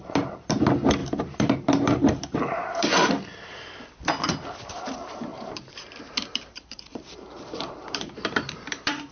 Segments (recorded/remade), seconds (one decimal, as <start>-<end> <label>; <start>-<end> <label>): 0.0-1.0 recorded; 1.0-3.1 remade; 3.1-5.3 recorded; 5.3-9.1 remade